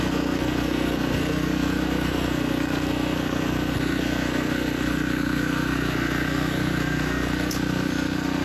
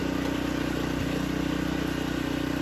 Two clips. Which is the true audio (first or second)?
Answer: second